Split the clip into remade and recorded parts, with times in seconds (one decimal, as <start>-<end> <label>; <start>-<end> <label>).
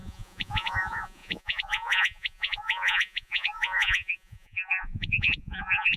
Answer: 0.0-6.0 remade